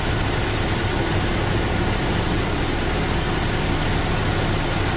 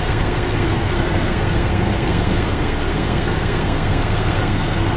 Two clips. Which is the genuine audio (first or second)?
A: first